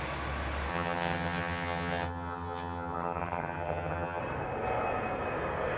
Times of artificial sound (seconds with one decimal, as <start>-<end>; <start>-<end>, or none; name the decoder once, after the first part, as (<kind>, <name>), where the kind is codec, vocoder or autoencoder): 0.7-4.2 (vocoder, HiFi-GAN)